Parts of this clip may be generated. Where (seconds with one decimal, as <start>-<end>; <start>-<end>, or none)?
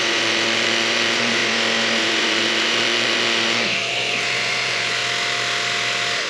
0.0-1.4; 2.2-5.0